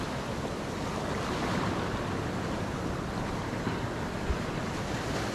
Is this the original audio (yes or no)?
yes